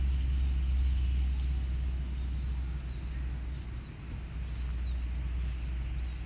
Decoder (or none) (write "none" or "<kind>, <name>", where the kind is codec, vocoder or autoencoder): none